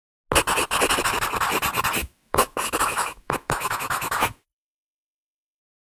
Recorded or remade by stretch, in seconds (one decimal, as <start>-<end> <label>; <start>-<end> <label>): 0.0-2.0 recorded; 2.0-5.6 remade; 5.6-6.0 recorded